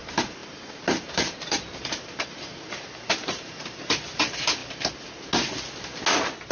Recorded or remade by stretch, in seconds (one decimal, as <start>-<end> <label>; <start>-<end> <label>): 0.0-4.6 remade; 4.6-6.5 recorded